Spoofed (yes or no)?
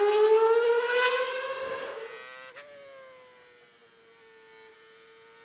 no